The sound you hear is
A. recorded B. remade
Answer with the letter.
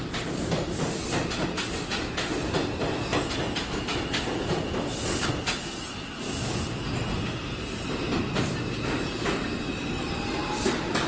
A